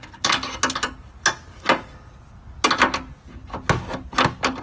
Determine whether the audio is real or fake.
real